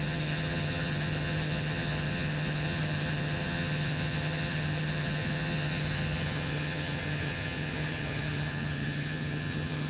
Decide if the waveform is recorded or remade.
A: remade